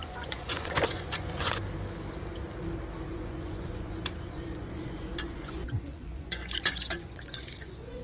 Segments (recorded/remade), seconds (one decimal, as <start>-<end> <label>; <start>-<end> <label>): 0.0-1.6 remade; 1.6-3.1 recorded; 3.1-8.0 remade